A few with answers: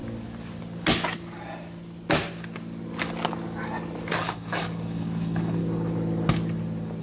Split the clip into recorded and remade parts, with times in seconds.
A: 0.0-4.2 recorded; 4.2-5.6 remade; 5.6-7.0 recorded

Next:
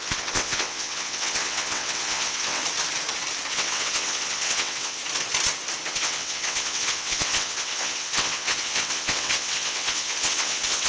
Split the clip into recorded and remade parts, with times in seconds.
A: 0.0-2.6 remade; 2.6-3.5 recorded; 3.5-5.0 remade; 5.0-5.9 recorded; 5.9-10.9 remade